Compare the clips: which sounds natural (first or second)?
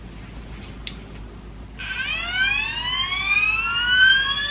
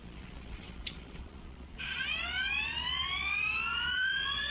first